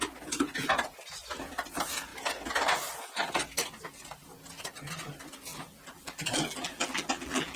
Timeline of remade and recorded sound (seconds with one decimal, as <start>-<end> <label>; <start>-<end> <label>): 0.0-5.5 recorded; 5.5-7.6 remade